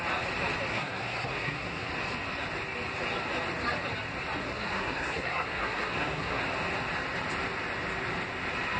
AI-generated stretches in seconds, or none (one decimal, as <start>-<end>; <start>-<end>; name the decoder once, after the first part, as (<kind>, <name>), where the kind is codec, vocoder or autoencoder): 0.7-1.9 (codec, SNAC); 4.4-6.4